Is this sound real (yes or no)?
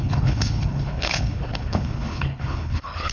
no